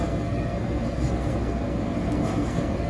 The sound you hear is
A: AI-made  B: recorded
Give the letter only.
A